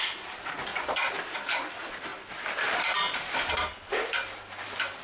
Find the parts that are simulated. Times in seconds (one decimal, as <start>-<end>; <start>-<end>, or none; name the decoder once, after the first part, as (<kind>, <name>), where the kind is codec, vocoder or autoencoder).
none